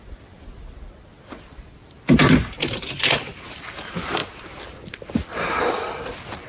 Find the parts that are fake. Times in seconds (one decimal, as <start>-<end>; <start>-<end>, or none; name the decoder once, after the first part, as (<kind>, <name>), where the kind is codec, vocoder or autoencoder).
none